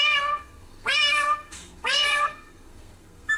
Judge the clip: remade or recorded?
remade